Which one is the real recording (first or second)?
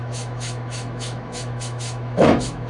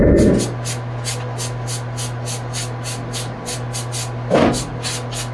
second